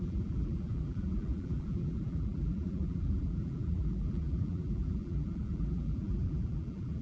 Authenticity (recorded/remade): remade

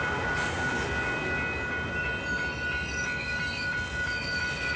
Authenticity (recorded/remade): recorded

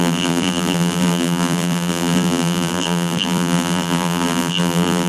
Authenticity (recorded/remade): remade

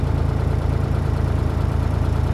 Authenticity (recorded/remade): remade